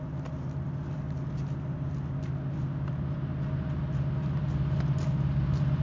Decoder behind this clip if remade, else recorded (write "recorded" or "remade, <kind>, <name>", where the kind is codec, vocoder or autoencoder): recorded